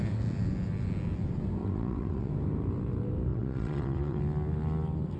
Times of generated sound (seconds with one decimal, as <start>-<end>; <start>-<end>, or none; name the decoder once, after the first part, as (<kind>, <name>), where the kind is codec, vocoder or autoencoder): 1.6-2.3 (vocoder, WaveNeXt); 3.3-4.2